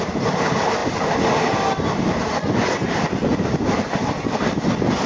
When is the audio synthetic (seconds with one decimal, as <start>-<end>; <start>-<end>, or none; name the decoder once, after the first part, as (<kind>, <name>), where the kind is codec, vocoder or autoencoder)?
none